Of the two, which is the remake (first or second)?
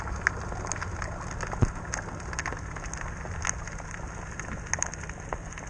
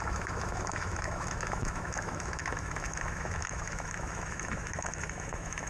second